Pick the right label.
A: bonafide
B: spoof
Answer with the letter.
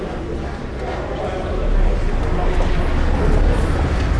A